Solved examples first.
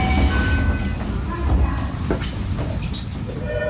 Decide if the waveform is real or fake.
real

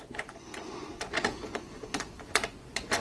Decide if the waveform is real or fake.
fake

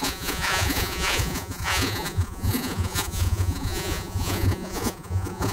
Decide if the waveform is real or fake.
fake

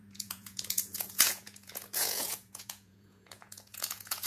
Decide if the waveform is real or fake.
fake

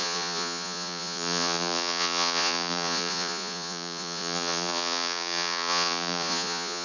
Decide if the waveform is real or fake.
fake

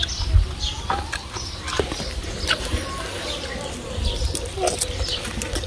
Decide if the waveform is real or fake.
real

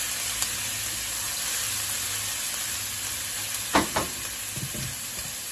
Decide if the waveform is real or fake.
real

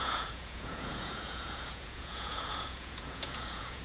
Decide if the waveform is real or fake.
fake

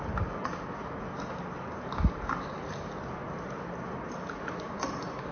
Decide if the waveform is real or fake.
real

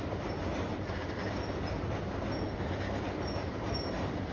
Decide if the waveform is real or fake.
real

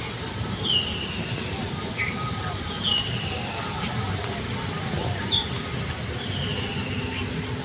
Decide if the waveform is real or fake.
real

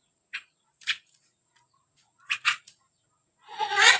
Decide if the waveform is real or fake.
fake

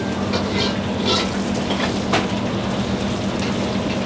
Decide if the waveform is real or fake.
real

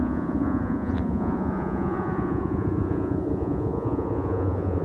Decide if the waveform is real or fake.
fake